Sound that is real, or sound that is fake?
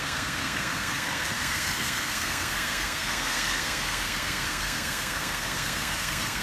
fake